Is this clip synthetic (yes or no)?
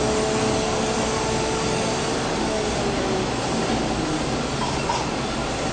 no